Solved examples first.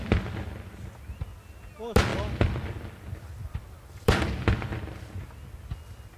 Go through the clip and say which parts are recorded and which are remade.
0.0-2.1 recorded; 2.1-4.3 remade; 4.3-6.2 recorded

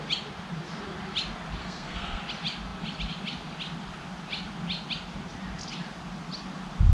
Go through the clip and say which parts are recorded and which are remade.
0.0-1.6 recorded; 1.6-2.2 remade; 2.2-6.9 recorded

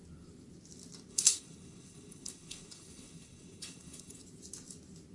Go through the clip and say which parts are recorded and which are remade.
0.0-1.1 recorded; 1.1-4.2 remade; 4.2-5.1 recorded

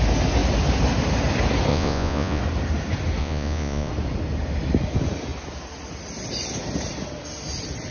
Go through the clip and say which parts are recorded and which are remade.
0.0-1.7 recorded; 1.7-2.4 remade; 2.4-3.2 recorded; 3.2-3.9 remade; 3.9-7.9 recorded

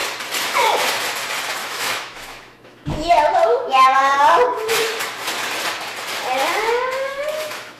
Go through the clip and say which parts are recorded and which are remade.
0.0-1.6 recorded; 1.6-5.0 remade; 5.0-7.1 recorded; 7.1-7.8 remade

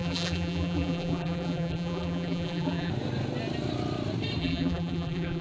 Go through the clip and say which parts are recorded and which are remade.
0.0-2.9 remade; 2.9-4.4 recorded; 4.4-5.4 remade